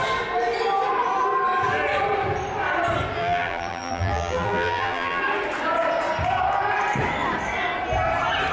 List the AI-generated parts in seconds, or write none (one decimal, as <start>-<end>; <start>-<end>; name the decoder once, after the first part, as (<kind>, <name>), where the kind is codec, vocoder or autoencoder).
3.2-5.2 (vocoder, BigVGAN v2)